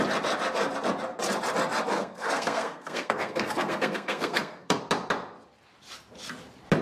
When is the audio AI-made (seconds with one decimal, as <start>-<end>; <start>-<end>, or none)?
1.9-4.8